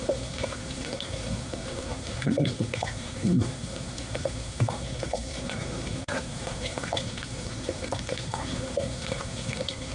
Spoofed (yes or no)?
yes